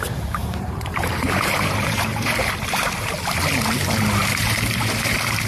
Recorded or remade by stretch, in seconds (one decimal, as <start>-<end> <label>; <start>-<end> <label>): 0.0-0.4 recorded; 0.4-2.4 remade; 2.4-4.2 recorded; 4.2-4.8 remade; 4.8-5.5 recorded